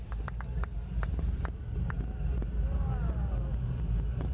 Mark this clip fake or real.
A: fake